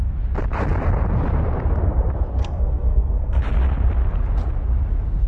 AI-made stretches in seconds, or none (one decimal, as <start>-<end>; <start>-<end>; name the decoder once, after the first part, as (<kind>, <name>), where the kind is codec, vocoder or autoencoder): 2.4-3.4 (codec, SNAC)